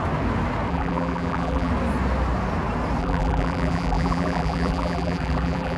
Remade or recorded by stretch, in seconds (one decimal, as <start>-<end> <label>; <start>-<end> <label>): 0.0-0.7 recorded; 0.7-1.7 remade; 1.7-3.0 recorded; 3.0-5.8 remade